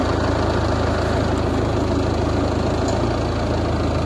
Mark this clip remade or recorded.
recorded